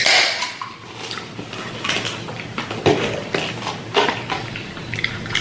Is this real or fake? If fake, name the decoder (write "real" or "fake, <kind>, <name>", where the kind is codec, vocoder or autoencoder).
real